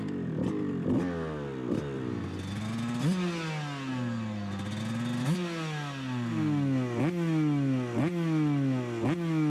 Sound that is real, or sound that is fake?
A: real